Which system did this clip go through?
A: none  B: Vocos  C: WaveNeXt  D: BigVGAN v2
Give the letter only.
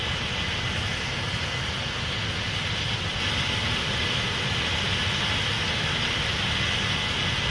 A